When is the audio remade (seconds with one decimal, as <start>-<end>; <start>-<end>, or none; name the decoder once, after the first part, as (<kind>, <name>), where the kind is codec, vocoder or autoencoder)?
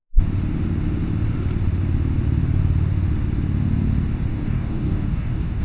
4.3-5.6 (codec, DAC)